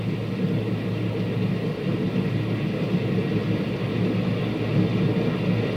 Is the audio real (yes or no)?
yes